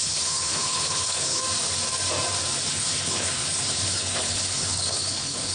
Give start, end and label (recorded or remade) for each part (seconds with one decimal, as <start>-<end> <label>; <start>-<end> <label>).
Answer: 0.0-1.4 remade; 1.4-2.7 recorded; 2.7-5.5 remade